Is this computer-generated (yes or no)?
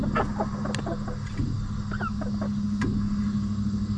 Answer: no